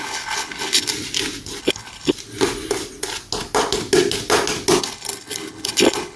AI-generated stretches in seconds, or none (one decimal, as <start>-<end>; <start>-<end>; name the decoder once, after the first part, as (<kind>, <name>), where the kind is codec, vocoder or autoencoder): 0.0-0.9 (codec, HILCodec); 1.6-2.1; 4.8-6.2